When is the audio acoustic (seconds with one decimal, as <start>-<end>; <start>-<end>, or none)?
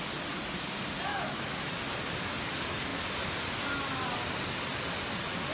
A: 0.0-1.1; 1.7-5.5